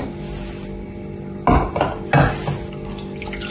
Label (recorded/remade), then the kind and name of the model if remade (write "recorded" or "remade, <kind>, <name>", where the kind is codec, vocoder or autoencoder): recorded